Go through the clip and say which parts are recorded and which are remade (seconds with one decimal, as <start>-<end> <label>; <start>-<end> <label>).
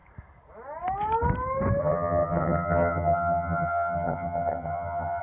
0.0-1.8 recorded; 1.8-5.2 remade